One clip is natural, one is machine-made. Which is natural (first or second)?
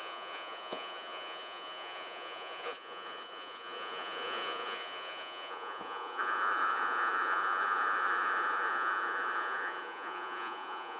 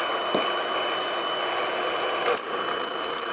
second